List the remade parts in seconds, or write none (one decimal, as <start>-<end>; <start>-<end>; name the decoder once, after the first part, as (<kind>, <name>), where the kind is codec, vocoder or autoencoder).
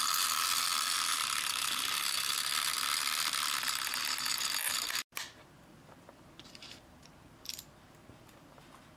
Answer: 0.0-2.5 (vocoder, BigVGAN v2); 5.2-9.0